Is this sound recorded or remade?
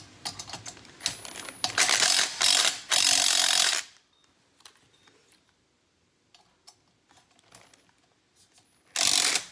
recorded